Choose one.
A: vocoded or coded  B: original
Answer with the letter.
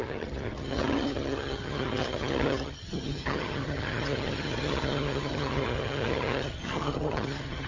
A